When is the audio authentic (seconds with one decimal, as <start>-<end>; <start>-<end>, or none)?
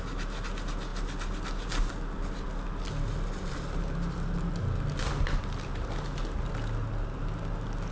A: 0.0-7.9